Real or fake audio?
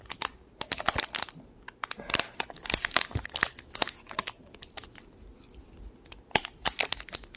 real